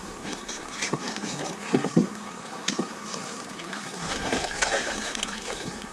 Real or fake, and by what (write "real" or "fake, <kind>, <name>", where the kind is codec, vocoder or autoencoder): fake, codec, SNAC